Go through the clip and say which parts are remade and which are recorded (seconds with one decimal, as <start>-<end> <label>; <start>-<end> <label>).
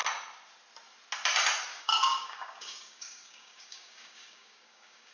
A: 0.0-1.7 recorded; 1.7-5.1 remade